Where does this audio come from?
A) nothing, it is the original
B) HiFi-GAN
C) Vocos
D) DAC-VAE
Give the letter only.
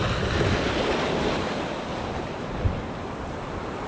A